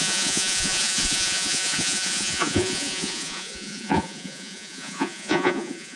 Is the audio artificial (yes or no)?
yes